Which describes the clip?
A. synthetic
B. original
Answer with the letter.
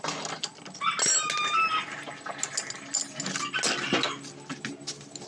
B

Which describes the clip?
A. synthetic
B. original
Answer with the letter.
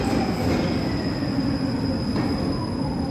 B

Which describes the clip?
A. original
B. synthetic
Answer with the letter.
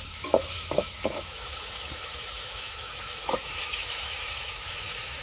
B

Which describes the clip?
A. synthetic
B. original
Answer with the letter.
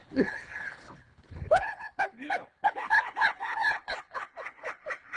A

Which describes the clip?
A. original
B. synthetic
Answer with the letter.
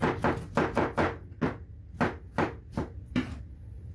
A